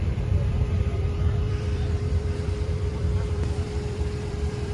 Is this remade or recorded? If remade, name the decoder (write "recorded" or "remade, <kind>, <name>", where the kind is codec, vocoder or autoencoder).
remade, vocoder, BigVGAN v2